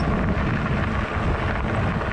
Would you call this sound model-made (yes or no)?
no